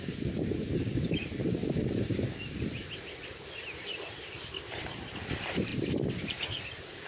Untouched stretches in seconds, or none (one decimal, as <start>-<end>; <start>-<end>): 1.6-4.6; 5.7-6.2

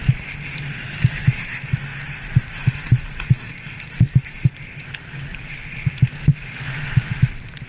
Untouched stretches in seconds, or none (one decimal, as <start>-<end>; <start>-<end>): 0.0-5.3; 5.9-7.7

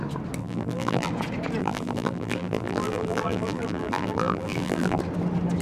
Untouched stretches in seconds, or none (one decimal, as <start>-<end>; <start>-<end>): 0.0-0.4; 1.1-1.6; 5.0-5.6

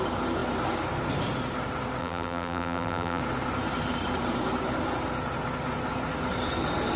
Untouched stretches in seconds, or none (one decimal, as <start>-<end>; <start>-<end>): 0.0-2.0; 3.2-7.0